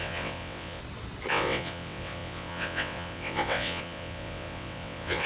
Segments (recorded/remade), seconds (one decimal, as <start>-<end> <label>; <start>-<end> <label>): 0.0-0.8 remade; 0.8-1.3 recorded; 1.3-5.3 remade